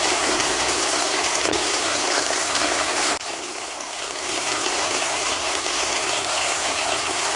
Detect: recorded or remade remade